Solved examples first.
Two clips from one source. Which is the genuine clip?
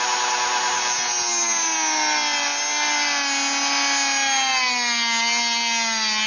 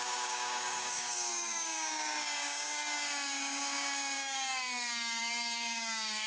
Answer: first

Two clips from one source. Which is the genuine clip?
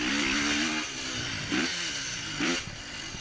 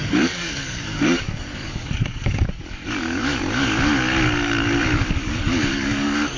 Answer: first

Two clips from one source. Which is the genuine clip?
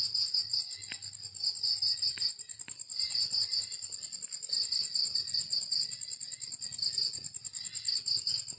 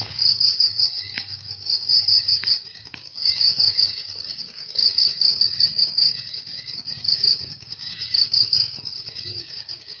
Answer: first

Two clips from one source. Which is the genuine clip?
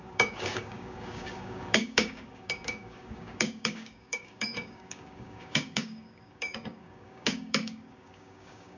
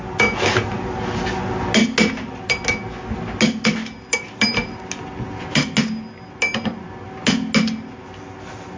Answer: second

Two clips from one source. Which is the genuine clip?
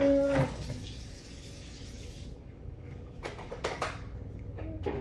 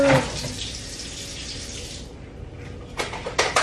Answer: second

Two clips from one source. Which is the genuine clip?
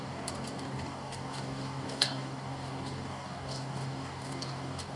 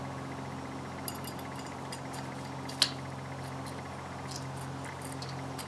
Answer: second